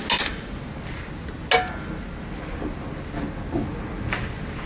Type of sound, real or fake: real